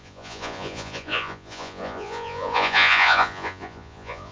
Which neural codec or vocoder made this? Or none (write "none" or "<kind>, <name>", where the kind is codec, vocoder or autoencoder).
vocoder, Vocos